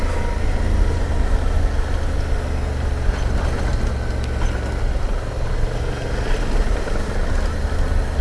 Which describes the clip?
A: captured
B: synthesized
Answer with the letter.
A